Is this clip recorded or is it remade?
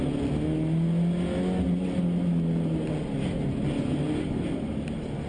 recorded